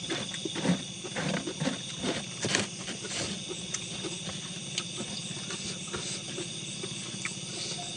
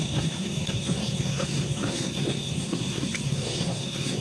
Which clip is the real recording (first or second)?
first